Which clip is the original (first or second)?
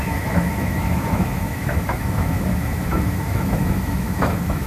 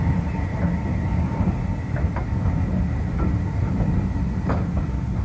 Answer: second